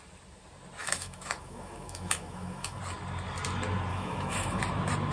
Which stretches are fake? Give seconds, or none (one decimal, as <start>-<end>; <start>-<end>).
0.8-2.8; 3.9-4.6